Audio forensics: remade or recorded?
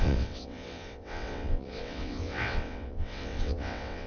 remade